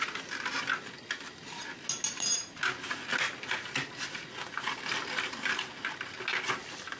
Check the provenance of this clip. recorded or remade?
recorded